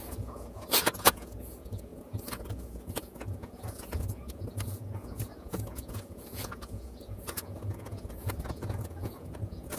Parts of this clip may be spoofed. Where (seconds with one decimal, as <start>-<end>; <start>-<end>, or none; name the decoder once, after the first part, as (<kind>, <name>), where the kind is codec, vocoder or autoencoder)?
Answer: 0.0-9.8 (vocoder, Vocos)